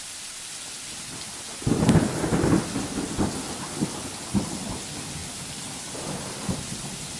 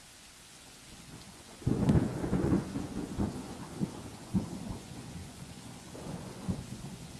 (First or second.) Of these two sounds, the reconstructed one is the second